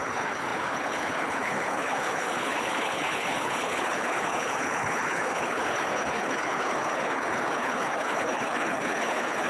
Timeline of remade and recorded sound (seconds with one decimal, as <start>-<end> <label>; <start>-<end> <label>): 0.0-9.5 remade